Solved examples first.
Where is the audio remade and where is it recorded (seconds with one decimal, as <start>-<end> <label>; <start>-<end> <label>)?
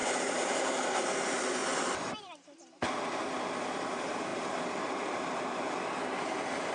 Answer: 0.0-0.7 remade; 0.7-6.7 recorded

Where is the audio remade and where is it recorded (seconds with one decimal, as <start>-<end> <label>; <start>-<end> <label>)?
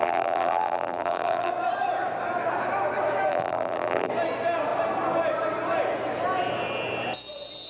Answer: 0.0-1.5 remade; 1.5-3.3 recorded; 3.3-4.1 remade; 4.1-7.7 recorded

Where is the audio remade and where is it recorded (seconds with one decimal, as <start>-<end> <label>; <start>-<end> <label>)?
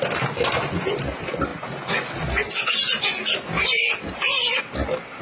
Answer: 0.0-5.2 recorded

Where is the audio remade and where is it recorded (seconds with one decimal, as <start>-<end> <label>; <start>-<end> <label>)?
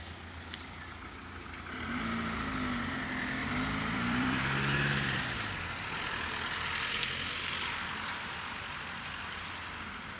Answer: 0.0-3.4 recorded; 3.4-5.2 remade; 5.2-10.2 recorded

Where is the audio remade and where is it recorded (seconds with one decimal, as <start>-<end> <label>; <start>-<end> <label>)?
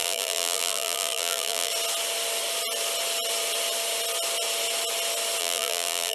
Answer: 0.0-1.7 remade; 1.7-5.4 recorded; 5.4-6.1 remade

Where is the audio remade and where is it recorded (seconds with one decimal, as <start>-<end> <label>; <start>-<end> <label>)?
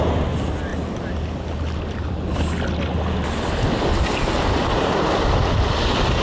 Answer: 0.0-3.9 recorded; 3.9-5.1 remade; 5.1-6.2 recorded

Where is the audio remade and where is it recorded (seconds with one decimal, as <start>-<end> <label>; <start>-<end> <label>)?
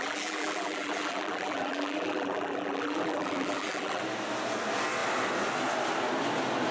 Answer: 0.0-4.0 remade; 4.0-6.7 recorded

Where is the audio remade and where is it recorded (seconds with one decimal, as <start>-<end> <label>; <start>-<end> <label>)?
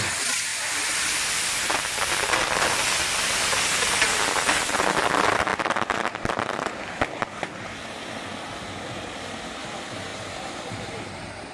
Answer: 0.0-10.1 recorded; 10.1-11.5 remade